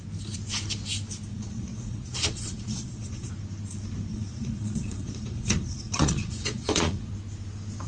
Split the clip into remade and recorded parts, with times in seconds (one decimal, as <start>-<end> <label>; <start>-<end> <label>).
0.0-1.3 recorded; 1.3-3.3 remade; 3.3-4.1 recorded; 4.1-7.1 remade; 7.1-7.9 recorded

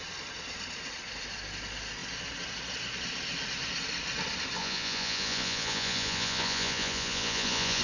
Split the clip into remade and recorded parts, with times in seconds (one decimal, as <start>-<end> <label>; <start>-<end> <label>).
0.0-4.6 recorded; 4.6-7.8 remade